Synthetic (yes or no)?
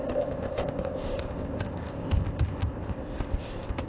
yes